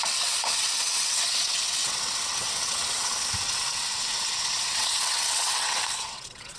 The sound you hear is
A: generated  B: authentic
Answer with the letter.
A